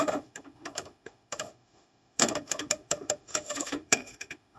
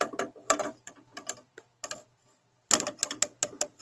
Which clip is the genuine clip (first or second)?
second